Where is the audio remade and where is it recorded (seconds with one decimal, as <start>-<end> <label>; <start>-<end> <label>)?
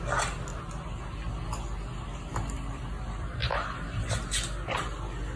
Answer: 0.0-5.4 recorded